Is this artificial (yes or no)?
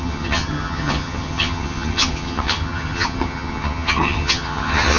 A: yes